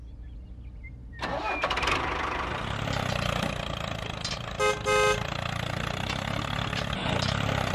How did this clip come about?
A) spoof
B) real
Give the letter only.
B